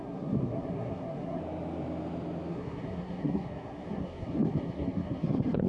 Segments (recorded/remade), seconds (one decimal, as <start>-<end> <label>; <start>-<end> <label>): 0.0-1.4 remade; 1.4-2.5 recorded; 2.5-5.7 remade